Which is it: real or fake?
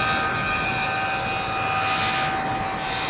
real